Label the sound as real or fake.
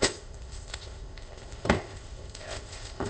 fake